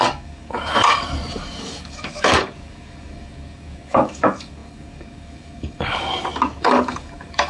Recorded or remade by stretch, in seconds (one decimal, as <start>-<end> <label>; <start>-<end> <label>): 0.0-7.5 remade